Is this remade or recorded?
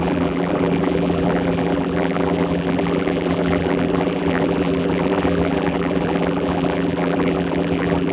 remade